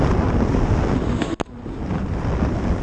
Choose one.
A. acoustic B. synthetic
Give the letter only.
A